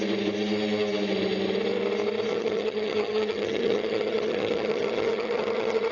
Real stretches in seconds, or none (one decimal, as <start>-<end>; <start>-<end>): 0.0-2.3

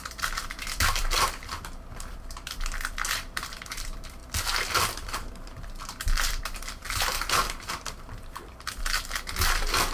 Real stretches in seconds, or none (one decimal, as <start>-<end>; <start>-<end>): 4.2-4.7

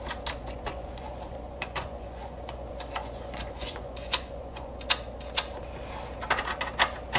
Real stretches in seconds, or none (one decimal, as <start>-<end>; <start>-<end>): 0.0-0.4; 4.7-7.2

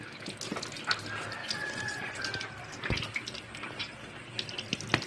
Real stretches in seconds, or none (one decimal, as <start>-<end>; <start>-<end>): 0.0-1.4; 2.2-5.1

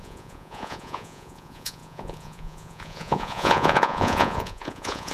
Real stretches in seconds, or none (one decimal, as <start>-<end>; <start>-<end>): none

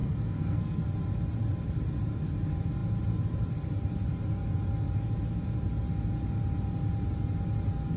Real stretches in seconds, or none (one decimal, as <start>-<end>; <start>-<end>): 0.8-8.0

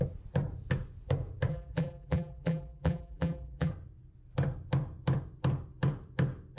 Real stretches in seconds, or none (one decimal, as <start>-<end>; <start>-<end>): 0.0-1.5; 3.7-6.6

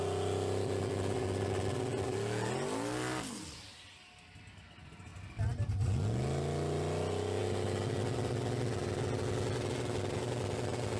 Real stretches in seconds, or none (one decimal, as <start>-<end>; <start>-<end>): 0.0-11.0